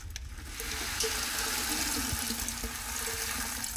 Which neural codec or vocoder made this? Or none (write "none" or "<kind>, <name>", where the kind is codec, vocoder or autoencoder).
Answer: none